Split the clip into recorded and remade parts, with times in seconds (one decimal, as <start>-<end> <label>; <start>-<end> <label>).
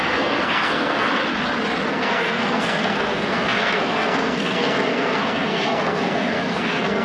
0.0-1.2 remade; 1.2-1.9 recorded; 1.9-7.0 remade